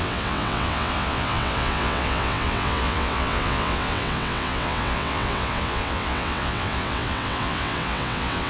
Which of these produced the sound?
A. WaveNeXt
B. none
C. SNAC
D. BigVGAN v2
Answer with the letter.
A